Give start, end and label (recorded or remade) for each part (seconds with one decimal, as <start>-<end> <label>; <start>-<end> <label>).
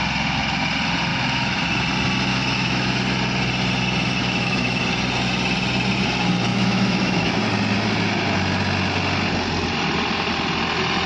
0.0-1.1 recorded; 1.1-1.6 remade; 1.6-2.3 recorded; 2.3-2.9 remade; 2.9-4.2 recorded; 4.2-4.8 remade; 4.8-6.5 recorded; 6.5-7.3 remade; 7.3-11.1 recorded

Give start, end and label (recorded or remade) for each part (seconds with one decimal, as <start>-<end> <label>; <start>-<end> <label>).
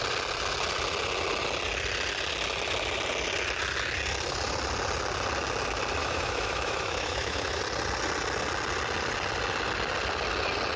0.0-6.0 recorded; 6.0-7.6 remade; 7.6-10.8 recorded